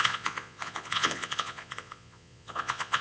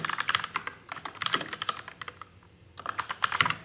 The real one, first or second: second